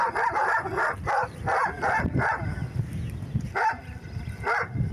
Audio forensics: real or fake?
real